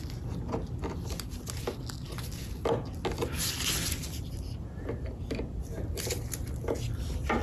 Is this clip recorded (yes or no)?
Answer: yes